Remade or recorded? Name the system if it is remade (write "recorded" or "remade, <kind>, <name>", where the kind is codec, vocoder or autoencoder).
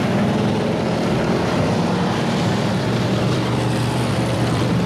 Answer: remade, vocoder, BigVGAN v2